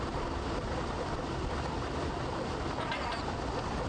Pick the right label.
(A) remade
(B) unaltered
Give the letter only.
B